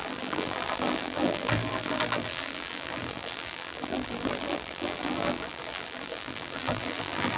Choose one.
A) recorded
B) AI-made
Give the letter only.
B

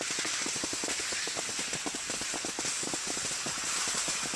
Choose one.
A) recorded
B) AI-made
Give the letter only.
A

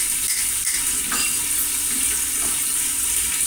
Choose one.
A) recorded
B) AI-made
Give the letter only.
A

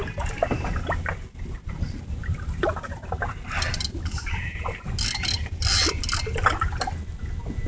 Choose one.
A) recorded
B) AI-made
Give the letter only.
A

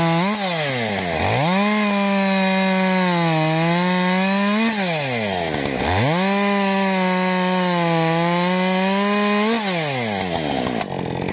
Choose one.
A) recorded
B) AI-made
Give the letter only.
A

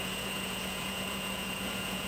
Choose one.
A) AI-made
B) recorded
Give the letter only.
A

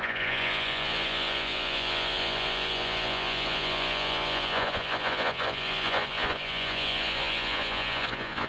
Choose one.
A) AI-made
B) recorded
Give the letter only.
A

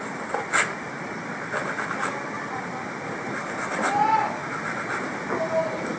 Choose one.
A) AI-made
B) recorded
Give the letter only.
B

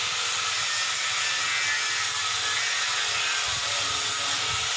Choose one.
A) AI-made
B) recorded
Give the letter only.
B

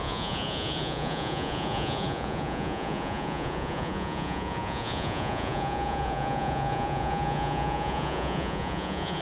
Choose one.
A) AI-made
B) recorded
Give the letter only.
A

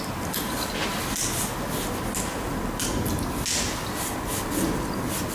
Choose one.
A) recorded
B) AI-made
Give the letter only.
A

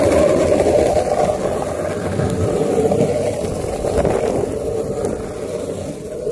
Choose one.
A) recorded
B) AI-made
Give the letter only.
A